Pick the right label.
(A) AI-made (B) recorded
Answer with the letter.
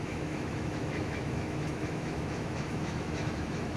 A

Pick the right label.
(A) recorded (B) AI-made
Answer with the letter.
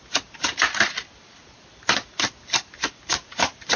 A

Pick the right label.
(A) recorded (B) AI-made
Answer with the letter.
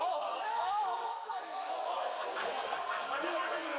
B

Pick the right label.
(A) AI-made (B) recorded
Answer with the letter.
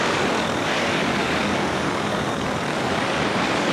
A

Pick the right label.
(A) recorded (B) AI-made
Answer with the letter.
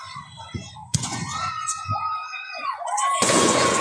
B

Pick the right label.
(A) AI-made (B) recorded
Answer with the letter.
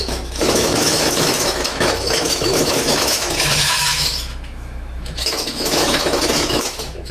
A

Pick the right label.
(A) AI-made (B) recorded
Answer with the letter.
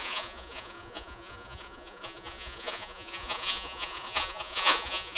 A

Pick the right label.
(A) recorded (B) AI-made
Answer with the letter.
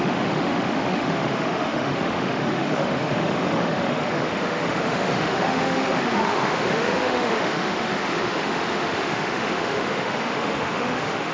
B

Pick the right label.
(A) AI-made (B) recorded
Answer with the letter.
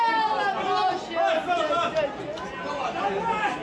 B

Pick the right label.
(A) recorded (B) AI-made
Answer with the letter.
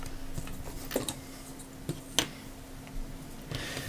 A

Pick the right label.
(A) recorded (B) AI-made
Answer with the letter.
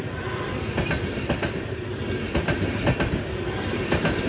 A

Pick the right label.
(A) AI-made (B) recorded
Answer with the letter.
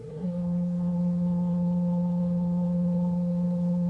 A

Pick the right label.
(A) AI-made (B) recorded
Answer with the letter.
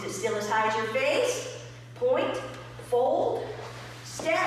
B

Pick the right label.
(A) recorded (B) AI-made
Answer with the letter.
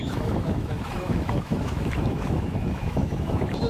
B